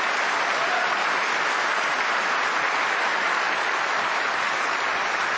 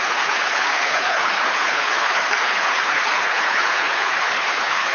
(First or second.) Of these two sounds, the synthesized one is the second